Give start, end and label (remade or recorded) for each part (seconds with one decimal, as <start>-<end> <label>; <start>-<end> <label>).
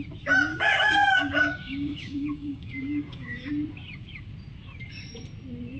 0.0-0.5 recorded; 0.5-3.5 remade; 3.5-5.8 recorded